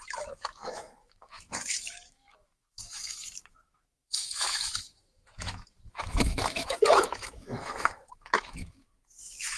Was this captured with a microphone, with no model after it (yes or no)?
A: no